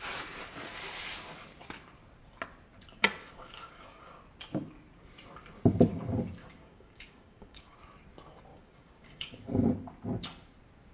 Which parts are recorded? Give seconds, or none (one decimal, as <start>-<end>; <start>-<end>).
0.0-3.2; 4.2-6.4; 7.8-8.5; 9.5-10.9